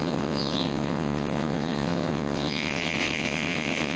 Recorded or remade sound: remade